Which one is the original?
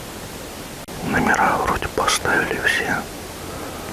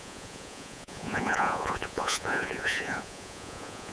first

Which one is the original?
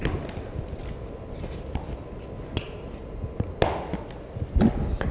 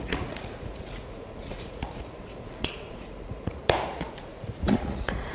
first